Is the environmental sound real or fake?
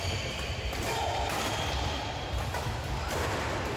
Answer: real